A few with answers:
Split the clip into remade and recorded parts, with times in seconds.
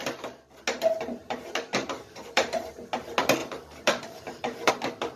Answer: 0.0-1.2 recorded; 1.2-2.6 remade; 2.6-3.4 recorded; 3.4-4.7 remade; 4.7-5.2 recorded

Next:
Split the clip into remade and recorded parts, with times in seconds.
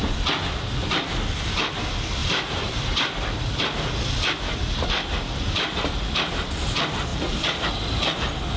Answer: 0.0-2.2 recorded; 2.2-2.9 remade; 2.9-7.1 recorded; 7.1-7.7 remade; 7.7-8.6 recorded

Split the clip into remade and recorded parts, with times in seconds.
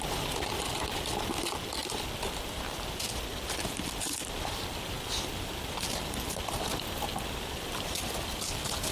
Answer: 0.0-1.8 recorded; 1.8-2.6 remade; 2.6-3.3 recorded; 3.3-8.3 remade; 8.3-8.9 recorded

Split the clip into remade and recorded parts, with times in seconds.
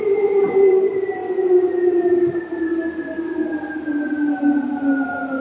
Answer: 0.0-1.2 remade; 1.2-2.0 recorded; 2.0-2.7 remade; 2.7-3.5 recorded; 3.5-5.4 remade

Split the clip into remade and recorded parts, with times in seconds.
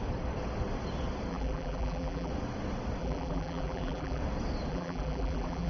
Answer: 0.0-1.3 recorded; 1.3-2.3 remade; 2.3-3.0 recorded; 3.0-4.2 remade; 4.2-4.7 recorded; 4.7-5.7 remade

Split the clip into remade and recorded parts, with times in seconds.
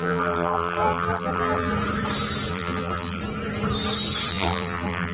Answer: 0.0-1.7 remade; 1.7-2.5 recorded; 2.5-3.2 remade; 3.2-4.3 recorded; 4.3-5.1 remade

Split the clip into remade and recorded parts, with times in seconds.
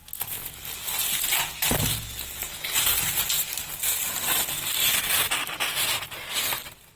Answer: 0.0-5.2 recorded; 5.2-6.2 remade; 6.2-7.0 recorded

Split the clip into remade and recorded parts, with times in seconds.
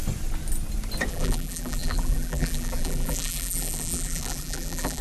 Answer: 0.0-1.1 recorded; 1.1-5.0 remade